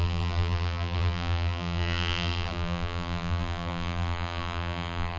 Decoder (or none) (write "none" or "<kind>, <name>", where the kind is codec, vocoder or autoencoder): vocoder, BigVGAN v2